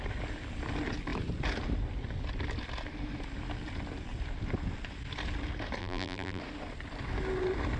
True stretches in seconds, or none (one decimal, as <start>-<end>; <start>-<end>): 0.0-5.8; 6.4-7.8